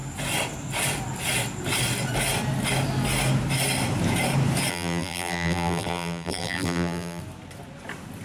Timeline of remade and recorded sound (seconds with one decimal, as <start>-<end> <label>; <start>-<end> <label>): 0.0-4.7 recorded; 4.7-7.2 remade; 7.2-8.2 recorded

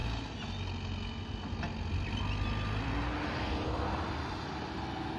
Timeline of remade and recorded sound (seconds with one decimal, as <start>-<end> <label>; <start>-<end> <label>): 0.0-5.2 recorded

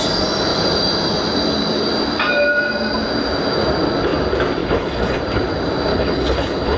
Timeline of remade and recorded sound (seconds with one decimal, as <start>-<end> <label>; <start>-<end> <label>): 0.0-4.6 recorded; 4.6-5.2 remade; 5.2-5.9 recorded; 5.9-6.8 remade